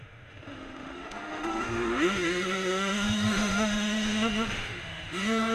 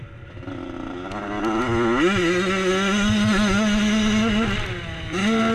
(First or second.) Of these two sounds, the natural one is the second